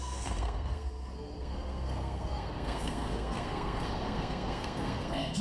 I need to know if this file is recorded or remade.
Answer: remade